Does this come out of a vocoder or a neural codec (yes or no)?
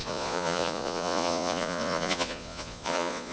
yes